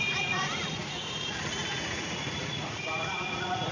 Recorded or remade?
remade